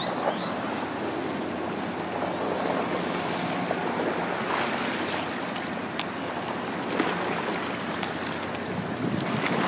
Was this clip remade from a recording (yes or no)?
no